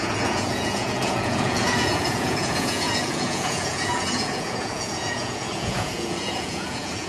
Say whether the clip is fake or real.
fake